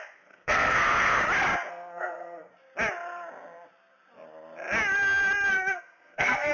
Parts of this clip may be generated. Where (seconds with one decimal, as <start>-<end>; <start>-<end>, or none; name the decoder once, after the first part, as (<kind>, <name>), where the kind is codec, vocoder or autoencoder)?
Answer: 0.0-1.2 (codec, SNAC); 1.7-2.5; 5.5-6.5